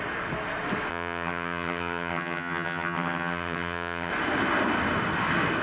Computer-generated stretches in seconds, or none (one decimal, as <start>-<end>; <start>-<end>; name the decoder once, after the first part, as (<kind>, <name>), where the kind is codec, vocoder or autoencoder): 0.9-4.1 (vocoder, HiFi-GAN)

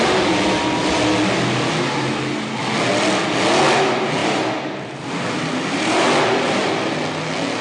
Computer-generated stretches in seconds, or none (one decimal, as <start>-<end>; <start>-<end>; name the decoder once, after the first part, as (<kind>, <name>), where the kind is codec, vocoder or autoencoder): none

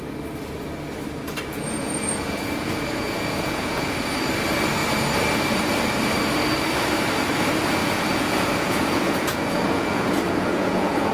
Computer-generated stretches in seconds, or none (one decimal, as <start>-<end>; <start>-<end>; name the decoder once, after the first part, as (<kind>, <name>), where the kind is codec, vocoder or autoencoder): 1.5-4.1 (vocoder, Vocos); 7.8-11.1

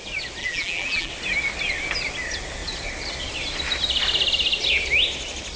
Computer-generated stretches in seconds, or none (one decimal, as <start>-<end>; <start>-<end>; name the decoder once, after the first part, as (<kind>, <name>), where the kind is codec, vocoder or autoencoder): 0.4-1.1 (vocoder, BigVGAN v2)

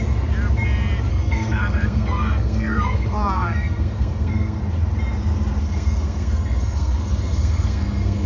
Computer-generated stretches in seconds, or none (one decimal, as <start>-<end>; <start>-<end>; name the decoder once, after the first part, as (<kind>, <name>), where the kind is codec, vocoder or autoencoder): 1.1-4.6 (codec, SNAC); 5.6-8.3

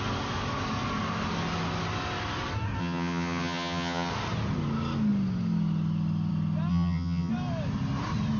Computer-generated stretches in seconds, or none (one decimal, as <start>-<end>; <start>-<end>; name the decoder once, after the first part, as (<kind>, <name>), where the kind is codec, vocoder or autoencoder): 2.8-4.1 (vocoder, HiFi-GAN); 6.7-7.3

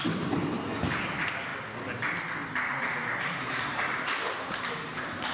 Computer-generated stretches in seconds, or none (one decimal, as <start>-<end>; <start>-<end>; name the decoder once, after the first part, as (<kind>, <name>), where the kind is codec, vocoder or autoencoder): none